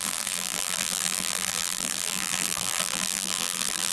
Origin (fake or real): fake